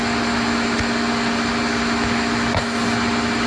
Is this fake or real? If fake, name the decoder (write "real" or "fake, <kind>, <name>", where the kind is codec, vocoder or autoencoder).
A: real